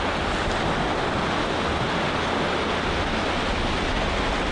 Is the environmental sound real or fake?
real